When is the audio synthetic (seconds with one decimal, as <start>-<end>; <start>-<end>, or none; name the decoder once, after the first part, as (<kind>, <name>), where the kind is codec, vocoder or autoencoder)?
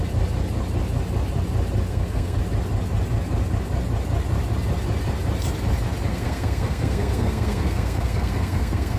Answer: 1.9-2.4 (codec, SNAC); 6.1-9.0